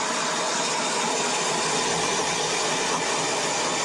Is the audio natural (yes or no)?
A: yes